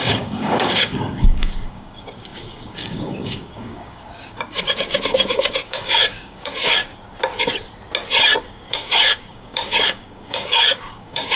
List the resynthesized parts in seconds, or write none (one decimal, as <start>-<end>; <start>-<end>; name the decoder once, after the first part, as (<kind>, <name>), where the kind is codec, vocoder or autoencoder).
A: 0.0-6.8 (codec, DAC); 8.4-11.4